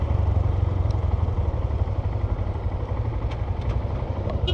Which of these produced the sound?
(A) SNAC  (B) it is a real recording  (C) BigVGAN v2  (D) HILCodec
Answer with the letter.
B